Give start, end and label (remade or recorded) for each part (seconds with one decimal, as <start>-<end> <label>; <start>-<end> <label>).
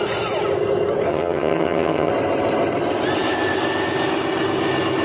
0.0-1.1 recorded; 1.1-2.1 remade; 2.1-5.0 recorded